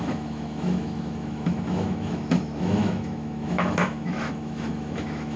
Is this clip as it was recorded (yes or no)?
no